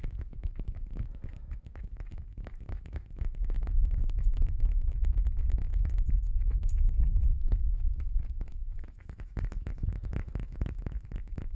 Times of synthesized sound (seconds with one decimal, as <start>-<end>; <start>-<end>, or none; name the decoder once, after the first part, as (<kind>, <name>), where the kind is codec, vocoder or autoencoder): 0.0-11.5 (autoencoder, DAC-VAE)